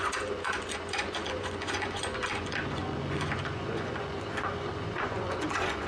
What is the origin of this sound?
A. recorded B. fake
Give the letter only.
B